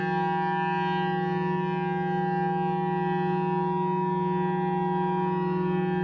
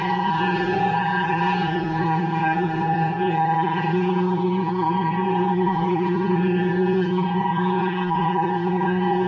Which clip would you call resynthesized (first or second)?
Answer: second